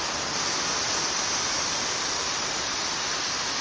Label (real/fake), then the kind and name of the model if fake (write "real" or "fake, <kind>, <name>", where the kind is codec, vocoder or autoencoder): real